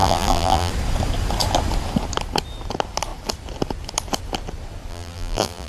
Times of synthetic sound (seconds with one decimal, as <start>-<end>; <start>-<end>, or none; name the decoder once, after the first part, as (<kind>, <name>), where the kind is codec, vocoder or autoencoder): 0.0-0.7 (vocoder, BigVGAN v2); 4.9-5.7